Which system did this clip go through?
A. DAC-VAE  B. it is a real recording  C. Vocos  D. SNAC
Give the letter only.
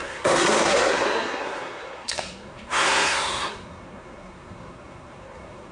D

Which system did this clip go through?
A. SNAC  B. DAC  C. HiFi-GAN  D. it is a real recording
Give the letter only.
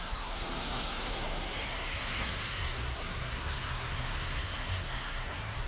A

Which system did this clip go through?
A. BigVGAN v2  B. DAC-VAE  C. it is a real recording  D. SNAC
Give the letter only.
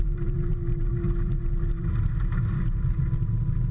A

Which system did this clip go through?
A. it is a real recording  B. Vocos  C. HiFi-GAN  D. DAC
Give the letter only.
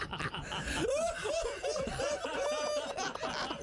A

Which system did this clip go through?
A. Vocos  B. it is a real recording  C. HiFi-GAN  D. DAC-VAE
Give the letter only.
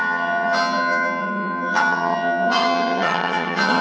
C